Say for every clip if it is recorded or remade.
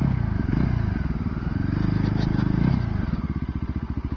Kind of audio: recorded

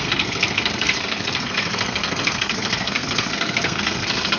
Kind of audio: remade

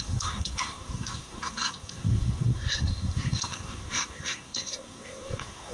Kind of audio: remade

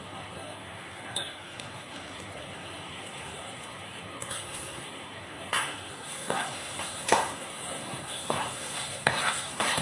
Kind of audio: remade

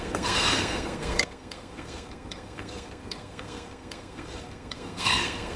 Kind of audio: remade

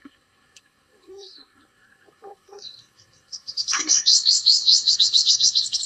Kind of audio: remade